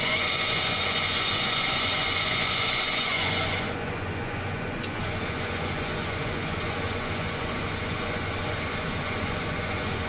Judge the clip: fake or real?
fake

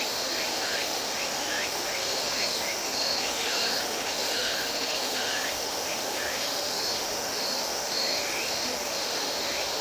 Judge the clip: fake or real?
fake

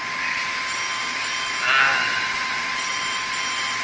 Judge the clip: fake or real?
real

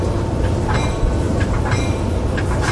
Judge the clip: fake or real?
real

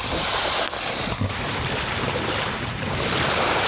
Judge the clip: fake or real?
real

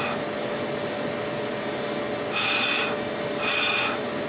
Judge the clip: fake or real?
real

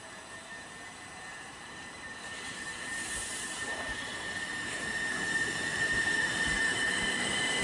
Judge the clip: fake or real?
fake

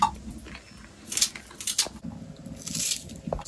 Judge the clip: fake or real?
real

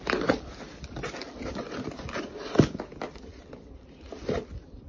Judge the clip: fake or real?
real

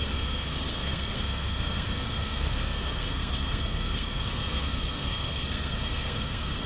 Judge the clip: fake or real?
fake